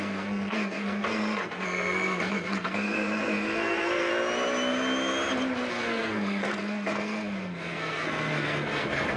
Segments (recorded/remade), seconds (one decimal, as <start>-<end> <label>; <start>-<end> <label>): 0.0-4.1 remade; 4.1-5.7 recorded; 5.7-9.2 remade